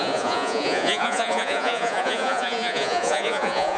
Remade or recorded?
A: remade